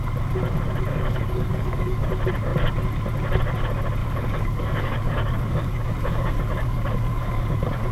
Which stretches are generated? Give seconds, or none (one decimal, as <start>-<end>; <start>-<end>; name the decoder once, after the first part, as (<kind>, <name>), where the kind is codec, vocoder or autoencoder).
0.9-2.1 (codec, DAC); 4.0-7.9